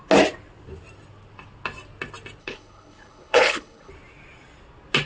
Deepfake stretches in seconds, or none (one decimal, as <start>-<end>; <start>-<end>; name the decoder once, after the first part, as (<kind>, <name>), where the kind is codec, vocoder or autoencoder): 2.4-3.9 (codec, HILCodec)